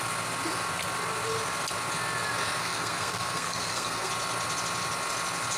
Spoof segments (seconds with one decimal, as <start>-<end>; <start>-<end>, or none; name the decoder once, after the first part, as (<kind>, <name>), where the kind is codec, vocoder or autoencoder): 2.6-4.1 (codec, SNAC)